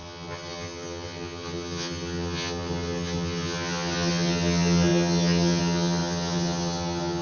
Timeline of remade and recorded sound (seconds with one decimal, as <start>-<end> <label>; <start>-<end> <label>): 0.0-7.2 remade